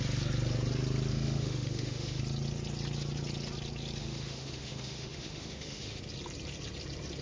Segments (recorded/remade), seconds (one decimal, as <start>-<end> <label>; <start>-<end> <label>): 0.0-1.1 recorded; 1.1-2.2 remade; 2.2-4.0 recorded; 4.0-6.0 remade; 6.0-7.2 recorded